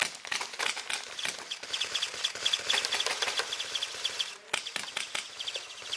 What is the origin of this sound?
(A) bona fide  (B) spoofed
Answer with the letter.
A